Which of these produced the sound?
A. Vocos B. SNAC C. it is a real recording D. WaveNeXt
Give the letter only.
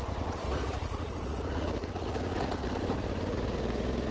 A